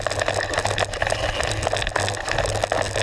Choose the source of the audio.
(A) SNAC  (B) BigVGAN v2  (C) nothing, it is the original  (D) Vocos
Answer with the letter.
C